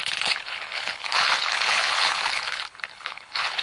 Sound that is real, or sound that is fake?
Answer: fake